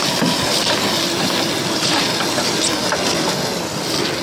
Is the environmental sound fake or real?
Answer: real